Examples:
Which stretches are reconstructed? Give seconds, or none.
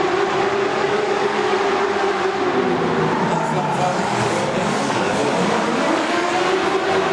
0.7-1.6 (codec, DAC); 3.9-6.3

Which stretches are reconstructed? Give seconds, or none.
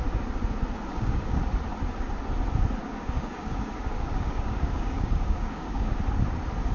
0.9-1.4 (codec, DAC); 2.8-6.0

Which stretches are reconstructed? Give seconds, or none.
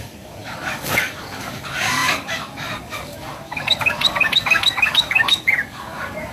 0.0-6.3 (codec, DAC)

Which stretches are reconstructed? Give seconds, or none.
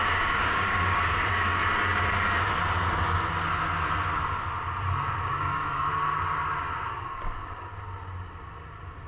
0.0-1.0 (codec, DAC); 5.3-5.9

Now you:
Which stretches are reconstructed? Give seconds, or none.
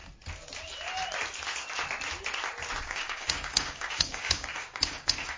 2.8-5.4 (codec, DAC)